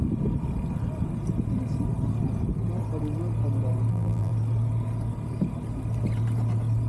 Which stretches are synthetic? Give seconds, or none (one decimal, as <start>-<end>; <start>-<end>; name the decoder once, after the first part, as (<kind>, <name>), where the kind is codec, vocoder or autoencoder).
3.9-4.3 (vocoder, BigVGAN v2)